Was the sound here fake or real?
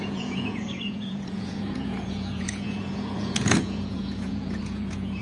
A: fake